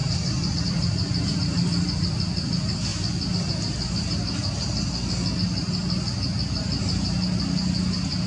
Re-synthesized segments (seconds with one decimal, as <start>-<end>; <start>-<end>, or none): 0.0-2.9; 7.4-8.3